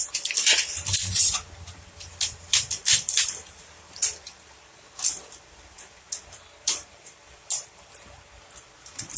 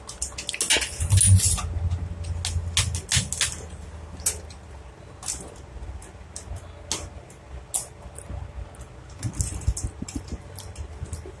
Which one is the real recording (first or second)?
second